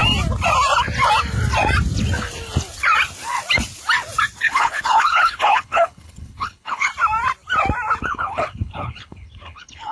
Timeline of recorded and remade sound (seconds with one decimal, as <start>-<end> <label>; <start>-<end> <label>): 0.0-4.4 recorded; 4.4-6.9 remade; 6.9-8.0 recorded; 8.0-9.9 remade